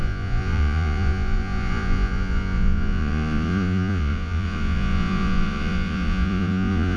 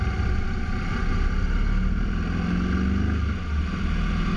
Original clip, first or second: second